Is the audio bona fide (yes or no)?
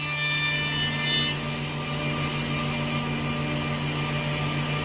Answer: yes